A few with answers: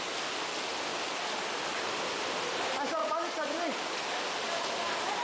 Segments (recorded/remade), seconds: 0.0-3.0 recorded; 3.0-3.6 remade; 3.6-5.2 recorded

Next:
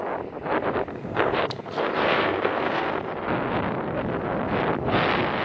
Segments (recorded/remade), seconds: 0.0-0.9 recorded; 0.9-3.1 remade; 3.1-5.4 recorded

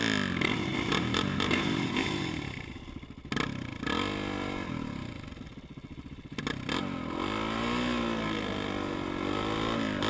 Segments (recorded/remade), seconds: 0.0-0.7 recorded; 0.7-2.8 remade; 2.8-10.1 recorded

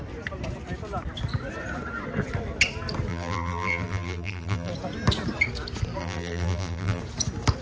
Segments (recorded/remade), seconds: 0.0-3.1 recorded; 3.1-4.7 remade; 4.7-6.0 recorded; 6.0-7.0 remade; 7.0-7.6 recorded

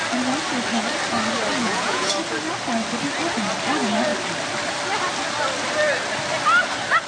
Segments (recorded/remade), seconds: 0.0-1.6 recorded; 1.6-2.1 remade; 2.1-7.1 recorded

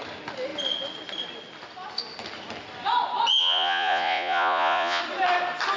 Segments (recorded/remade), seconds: 0.0-3.4 recorded; 3.4-5.0 remade; 5.0-5.8 recorded